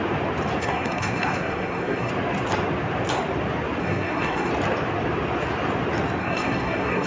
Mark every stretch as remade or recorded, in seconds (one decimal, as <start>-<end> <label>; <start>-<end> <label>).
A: 0.0-0.6 recorded; 0.6-2.1 remade; 2.1-3.8 recorded; 3.8-4.5 remade; 4.5-6.2 recorded; 6.2-7.1 remade